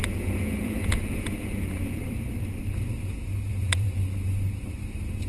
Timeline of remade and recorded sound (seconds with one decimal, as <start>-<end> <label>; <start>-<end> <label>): 0.0-2.0 remade; 2.0-3.5 recorded; 3.5-4.0 remade; 4.0-5.3 recorded